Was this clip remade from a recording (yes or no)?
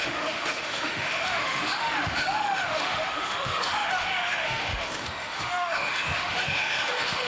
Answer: yes